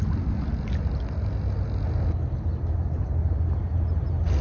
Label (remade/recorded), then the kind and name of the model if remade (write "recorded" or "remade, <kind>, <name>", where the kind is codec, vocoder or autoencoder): recorded